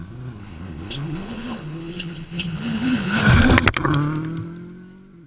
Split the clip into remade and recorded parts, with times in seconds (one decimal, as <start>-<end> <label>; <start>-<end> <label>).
0.0-0.4 recorded; 0.4-3.2 remade; 3.2-5.3 recorded